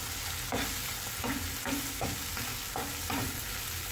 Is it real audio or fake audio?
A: real